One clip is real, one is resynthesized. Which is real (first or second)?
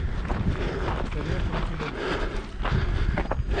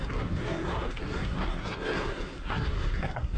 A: first